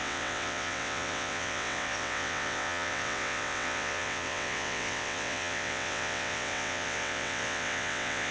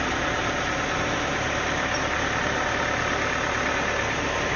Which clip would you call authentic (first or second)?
second